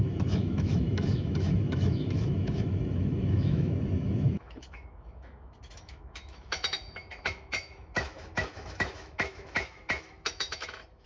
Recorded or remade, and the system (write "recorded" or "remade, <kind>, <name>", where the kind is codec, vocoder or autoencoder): remade, autoencoder, DAC-VAE